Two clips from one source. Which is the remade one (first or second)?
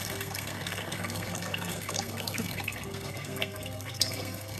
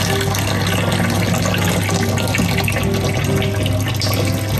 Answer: first